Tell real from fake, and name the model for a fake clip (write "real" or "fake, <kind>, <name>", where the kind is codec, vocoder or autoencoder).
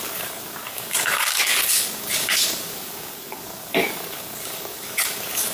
fake, codec, DAC